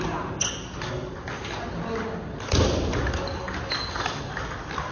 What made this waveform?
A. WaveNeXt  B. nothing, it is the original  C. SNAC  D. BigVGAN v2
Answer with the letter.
B